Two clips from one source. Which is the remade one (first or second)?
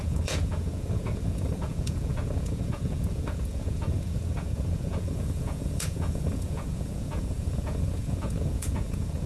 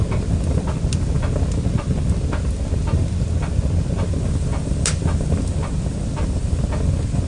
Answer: first